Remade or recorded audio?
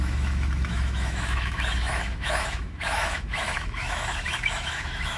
remade